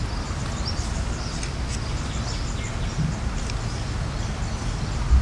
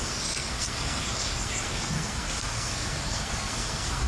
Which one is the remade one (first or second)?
second